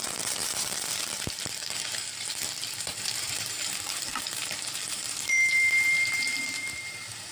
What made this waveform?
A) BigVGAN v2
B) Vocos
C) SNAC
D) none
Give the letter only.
A